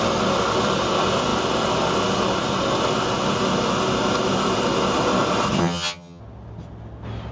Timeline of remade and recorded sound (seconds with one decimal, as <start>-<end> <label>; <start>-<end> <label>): 0.0-5.6 recorded; 5.6-6.2 remade; 6.2-7.3 recorded